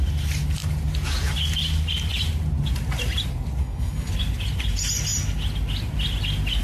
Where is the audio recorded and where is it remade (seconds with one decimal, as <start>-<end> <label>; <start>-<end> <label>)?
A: 0.0-3.6 recorded; 3.6-4.1 remade; 4.1-6.6 recorded